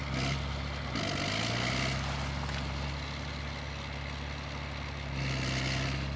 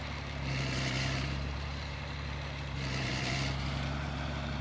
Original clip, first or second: first